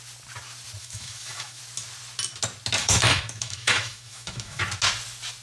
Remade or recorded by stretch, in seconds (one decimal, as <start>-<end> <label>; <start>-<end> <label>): 0.0-0.8 recorded; 0.8-1.6 remade; 1.6-2.8 recorded; 2.8-4.6 remade; 4.6-5.4 recorded